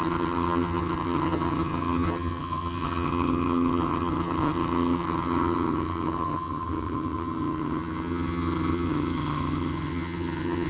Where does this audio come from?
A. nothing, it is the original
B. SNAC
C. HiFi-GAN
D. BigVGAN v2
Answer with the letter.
C